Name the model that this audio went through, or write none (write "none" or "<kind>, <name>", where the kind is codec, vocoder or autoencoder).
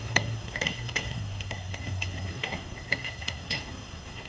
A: codec, SNAC